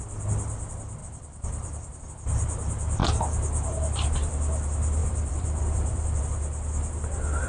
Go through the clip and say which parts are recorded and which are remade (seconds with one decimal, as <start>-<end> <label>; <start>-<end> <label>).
0.0-1.0 recorded; 1.0-2.0 remade; 2.0-5.0 recorded; 5.0-6.2 remade; 6.2-7.5 recorded